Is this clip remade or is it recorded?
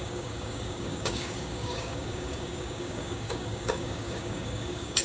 remade